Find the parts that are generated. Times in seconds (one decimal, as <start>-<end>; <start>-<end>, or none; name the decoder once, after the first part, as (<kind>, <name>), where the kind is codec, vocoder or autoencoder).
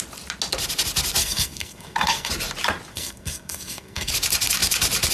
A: 1.2-2.3 (codec, SNAC); 2.9-4.1